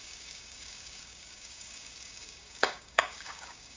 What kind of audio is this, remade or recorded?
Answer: remade